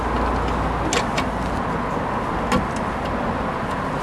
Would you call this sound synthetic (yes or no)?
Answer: no